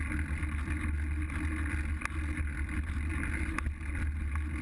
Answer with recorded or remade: recorded